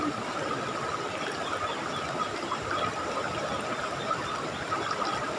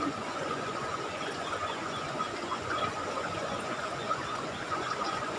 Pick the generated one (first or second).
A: second